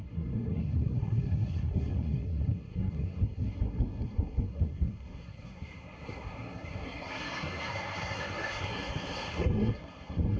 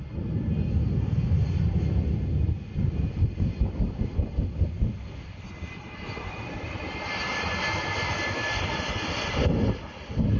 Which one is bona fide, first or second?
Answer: second